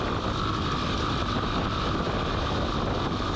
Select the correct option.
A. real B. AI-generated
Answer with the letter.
A